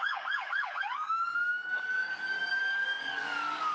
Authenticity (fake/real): fake